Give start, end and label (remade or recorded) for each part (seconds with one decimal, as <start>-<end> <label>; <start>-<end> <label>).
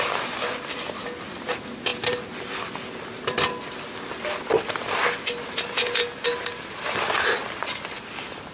0.0-8.5 recorded